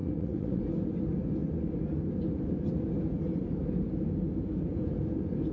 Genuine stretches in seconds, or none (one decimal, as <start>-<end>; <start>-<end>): 0.6-5.5